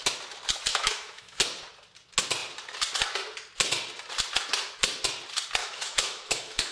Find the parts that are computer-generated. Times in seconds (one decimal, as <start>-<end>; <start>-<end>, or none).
0.7-1.4; 5.6-6.7